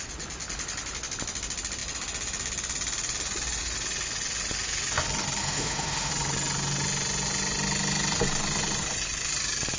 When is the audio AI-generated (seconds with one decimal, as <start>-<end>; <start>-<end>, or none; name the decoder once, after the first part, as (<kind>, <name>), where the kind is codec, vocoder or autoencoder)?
5.4-6.1 (autoencoder, DAC-VAE)